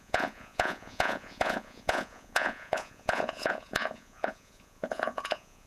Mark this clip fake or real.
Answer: fake